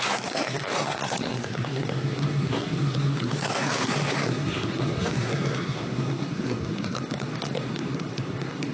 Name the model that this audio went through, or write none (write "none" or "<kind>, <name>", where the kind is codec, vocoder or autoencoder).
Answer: codec, SNAC